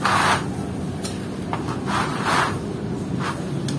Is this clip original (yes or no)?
yes